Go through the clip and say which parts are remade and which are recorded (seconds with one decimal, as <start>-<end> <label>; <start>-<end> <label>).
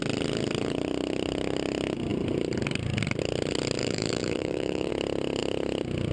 0.0-3.8 recorded; 3.8-4.9 remade; 4.9-6.1 recorded